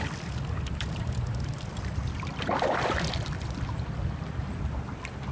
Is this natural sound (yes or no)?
yes